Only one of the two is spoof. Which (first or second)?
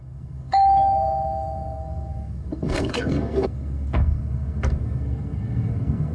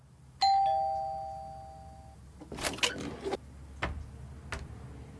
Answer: first